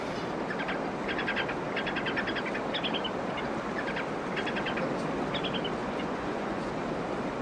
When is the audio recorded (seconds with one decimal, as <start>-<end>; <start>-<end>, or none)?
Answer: 0.0-5.8; 6.7-7.4